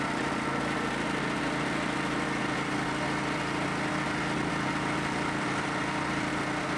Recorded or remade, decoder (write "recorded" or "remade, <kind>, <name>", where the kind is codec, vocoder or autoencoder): recorded